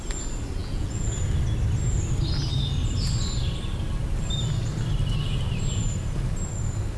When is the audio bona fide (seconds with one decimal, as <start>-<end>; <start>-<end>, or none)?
0.0-0.6; 1.2-7.0